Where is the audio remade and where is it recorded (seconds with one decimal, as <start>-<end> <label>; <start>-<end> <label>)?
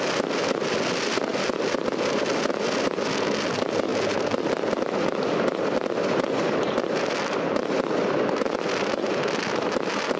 0.0-10.2 recorded